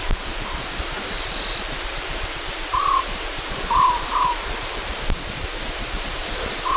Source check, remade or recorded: remade